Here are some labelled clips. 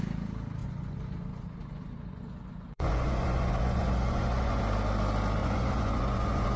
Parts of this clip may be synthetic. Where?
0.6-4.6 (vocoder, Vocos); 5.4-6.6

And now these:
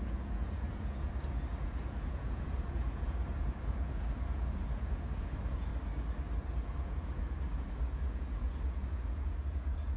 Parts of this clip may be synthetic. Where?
0.0-5.7 (vocoder, Vocos); 6.4-10.0